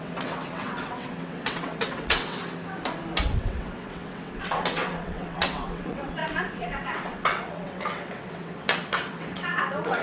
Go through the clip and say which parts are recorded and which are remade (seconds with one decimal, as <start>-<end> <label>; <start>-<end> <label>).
0.0-2.4 remade; 2.4-3.2 recorded; 3.2-10.0 remade